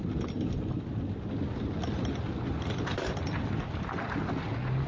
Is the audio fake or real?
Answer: real